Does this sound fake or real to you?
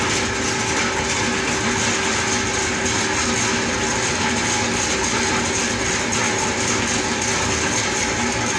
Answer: real